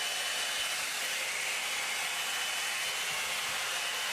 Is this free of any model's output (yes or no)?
yes